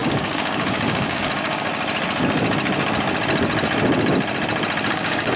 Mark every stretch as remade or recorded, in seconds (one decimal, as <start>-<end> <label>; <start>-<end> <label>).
0.0-1.7 remade; 1.7-4.9 recorded; 4.9-5.4 remade